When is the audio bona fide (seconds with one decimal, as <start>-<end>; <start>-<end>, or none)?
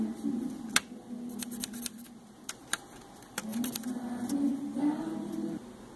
0.0-6.0